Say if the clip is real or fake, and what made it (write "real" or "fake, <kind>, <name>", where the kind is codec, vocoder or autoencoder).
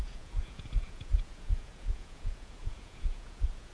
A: fake, vocoder, Vocos